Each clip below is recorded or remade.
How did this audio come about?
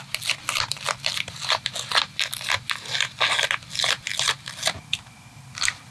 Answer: recorded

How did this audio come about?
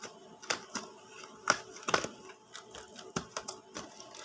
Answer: recorded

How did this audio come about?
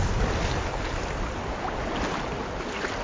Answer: recorded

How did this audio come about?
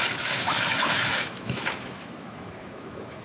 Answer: remade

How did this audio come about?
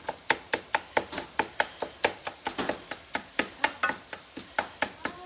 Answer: recorded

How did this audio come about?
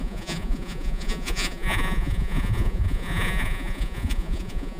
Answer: remade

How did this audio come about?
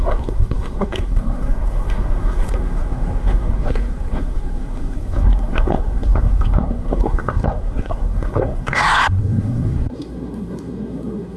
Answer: remade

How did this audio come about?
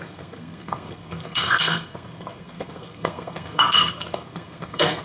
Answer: remade